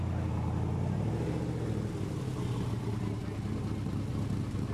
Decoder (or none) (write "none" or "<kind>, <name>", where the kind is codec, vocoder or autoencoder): none